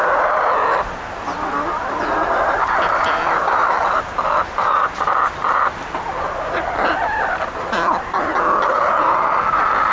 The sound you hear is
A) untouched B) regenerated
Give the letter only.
B